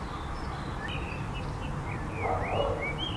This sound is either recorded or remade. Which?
recorded